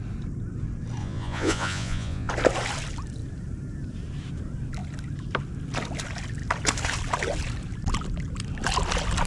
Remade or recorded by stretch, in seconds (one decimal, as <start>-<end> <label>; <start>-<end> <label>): 0.0-1.0 recorded; 1.0-2.3 remade; 2.3-9.3 recorded